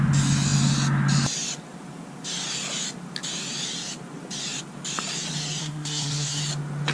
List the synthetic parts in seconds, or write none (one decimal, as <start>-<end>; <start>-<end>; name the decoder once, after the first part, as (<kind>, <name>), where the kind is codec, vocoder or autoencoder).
5.6-6.4 (codec, SNAC)